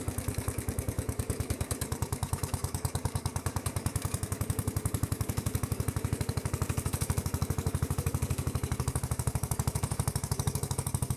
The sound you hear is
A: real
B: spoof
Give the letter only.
B